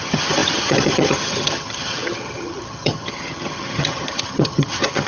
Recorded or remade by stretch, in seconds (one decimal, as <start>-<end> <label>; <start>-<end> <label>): 0.0-5.1 remade